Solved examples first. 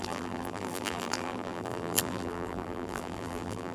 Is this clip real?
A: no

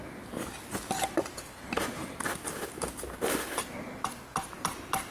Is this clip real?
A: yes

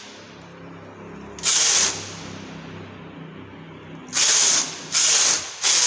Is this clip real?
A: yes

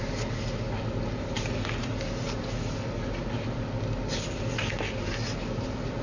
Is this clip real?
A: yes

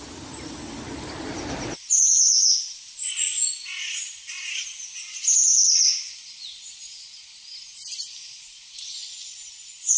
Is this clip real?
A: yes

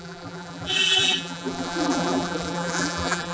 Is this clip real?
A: no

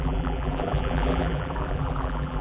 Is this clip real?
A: no